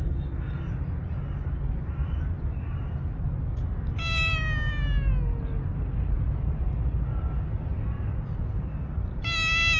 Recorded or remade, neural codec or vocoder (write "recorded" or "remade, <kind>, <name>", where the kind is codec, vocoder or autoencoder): recorded